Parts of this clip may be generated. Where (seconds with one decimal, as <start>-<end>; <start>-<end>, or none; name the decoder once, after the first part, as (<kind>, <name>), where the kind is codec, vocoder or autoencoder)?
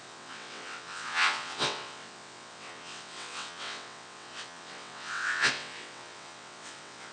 0.0-7.1 (vocoder, WaveNeXt)